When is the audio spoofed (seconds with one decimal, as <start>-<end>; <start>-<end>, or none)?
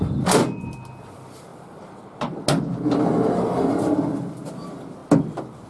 none